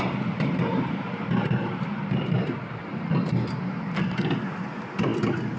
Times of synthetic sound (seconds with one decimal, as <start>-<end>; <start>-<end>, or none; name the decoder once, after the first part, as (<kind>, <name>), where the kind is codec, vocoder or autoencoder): none